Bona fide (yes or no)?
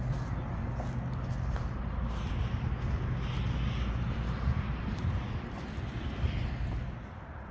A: yes